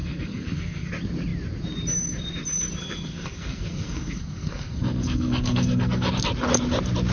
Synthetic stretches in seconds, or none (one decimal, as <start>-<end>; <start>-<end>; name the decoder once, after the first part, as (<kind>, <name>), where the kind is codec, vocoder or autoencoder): 0.0-0.9 (codec, SNAC); 2.8-6.1